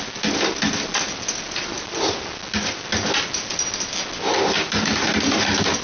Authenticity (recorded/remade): recorded